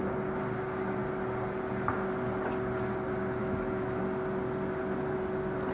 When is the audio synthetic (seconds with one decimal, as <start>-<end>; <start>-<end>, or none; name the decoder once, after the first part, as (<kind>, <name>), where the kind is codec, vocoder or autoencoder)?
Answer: 3.4-4.0 (autoencoder, DAC-VAE)